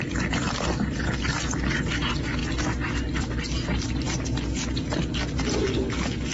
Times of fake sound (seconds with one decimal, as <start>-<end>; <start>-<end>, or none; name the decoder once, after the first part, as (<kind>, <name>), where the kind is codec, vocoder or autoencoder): none